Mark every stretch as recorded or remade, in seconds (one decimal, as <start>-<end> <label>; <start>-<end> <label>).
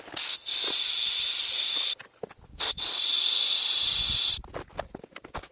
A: 0.0-5.5 recorded